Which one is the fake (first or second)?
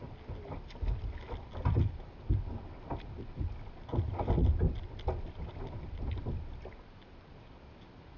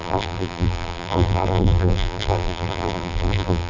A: second